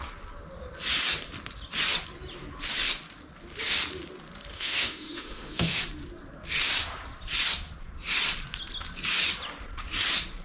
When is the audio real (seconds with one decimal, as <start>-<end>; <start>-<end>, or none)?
0.0-4.5; 5.8-10.4